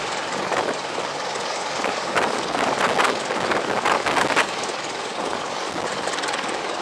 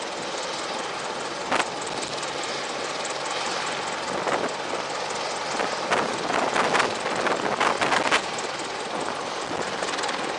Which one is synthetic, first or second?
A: first